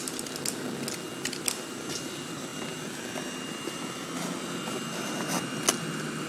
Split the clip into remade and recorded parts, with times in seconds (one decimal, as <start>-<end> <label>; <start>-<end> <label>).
0.0-6.3 recorded